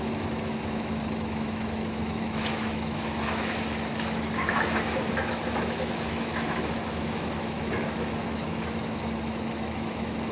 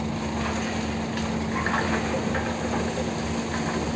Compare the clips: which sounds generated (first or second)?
first